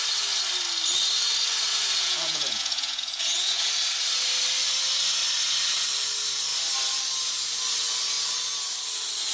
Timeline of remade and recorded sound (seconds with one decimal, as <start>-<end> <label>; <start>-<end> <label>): 0.0-1.7 recorded; 1.7-3.7 remade; 3.7-9.3 recorded